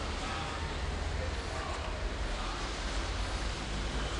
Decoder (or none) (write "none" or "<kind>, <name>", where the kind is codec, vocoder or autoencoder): none